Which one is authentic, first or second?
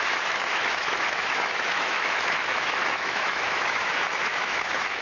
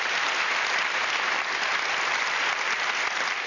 second